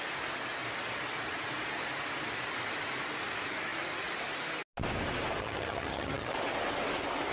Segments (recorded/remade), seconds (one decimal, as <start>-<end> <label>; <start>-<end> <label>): 0.0-5.4 recorded; 5.4-6.3 remade; 6.3-7.3 recorded